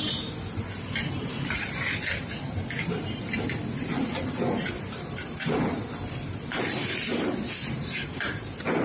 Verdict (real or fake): fake